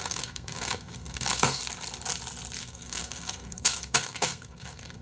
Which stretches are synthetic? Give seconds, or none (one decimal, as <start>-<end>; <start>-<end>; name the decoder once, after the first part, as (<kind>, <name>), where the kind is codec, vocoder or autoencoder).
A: 0.0-1.6 (codec, SNAC); 2.6-5.0